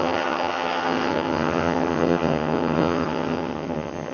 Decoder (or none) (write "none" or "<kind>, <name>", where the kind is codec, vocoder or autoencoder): vocoder, HiFi-GAN